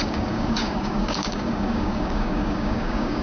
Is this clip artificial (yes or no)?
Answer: yes